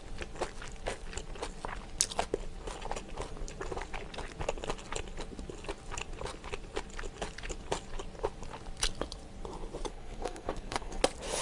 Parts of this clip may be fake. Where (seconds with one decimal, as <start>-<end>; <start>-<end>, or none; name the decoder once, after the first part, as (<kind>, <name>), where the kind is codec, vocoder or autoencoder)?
9.9-11.0 (codec, SNAC)